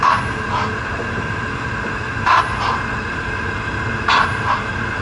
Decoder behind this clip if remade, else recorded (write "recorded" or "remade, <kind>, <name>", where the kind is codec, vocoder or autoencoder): recorded